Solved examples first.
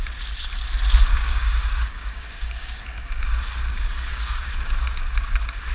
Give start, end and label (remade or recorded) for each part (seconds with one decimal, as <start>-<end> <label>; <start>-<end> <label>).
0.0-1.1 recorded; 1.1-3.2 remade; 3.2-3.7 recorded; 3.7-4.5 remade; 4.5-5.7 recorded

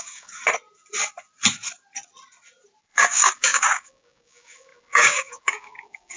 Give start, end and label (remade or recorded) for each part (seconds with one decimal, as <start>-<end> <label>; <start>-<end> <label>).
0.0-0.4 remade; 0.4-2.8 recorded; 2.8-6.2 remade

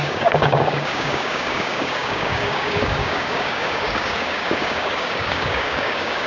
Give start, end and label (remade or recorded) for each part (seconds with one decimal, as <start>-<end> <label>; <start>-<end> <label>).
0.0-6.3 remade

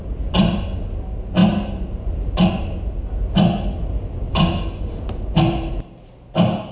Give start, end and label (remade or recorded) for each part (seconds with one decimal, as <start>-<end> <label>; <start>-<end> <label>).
0.0-4.3 recorded; 4.3-5.0 remade; 5.0-6.7 recorded